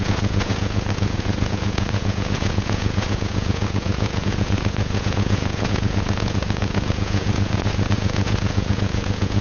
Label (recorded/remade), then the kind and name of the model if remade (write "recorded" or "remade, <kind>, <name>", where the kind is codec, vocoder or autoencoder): remade, vocoder, Vocos